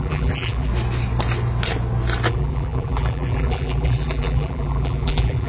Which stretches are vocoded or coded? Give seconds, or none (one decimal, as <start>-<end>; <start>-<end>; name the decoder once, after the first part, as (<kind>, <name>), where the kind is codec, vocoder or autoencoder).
0.0-0.7 (vocoder, BigVGAN v2); 2.3-5.5